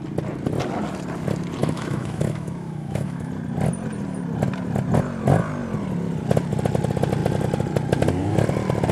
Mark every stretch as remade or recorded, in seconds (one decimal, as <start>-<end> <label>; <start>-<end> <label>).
0.0-1.6 recorded; 1.6-3.3 remade; 3.3-8.9 recorded